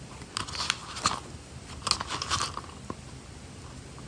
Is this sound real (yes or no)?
yes